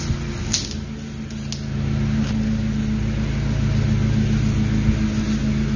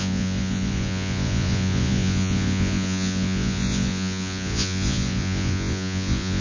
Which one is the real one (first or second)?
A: first